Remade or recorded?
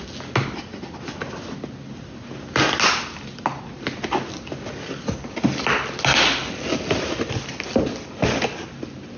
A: recorded